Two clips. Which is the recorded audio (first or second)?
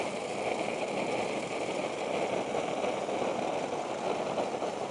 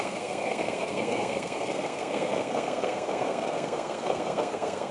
first